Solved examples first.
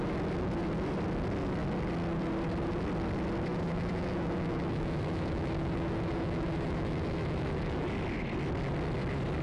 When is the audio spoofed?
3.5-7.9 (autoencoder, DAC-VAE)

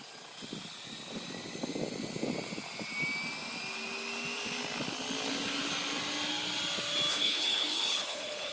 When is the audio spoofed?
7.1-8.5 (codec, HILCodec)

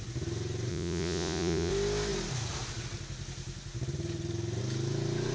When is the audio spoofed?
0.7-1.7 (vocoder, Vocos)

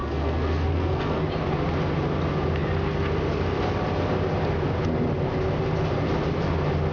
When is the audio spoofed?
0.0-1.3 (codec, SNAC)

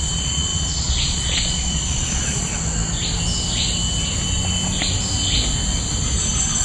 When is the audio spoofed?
0.0-2.5 (vocoder, Vocos)

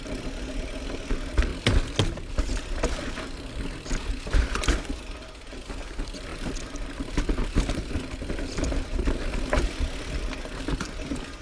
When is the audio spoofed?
none

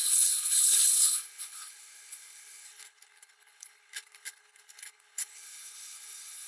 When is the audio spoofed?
0.0-6.5 (codec, HILCodec)